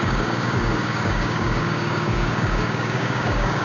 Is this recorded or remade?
remade